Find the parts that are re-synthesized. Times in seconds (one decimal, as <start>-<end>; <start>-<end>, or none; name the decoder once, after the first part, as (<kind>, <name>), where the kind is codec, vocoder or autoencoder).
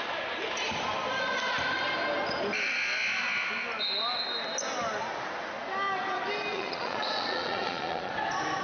6.5-8.1 (vocoder, Vocos)